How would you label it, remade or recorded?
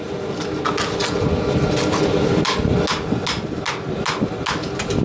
recorded